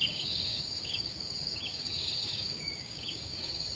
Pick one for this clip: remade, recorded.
remade